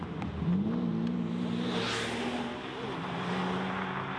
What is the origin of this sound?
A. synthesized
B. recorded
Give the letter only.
B